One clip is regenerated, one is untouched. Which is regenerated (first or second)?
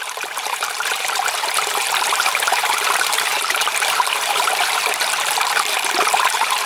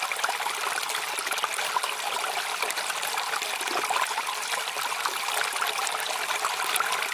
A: first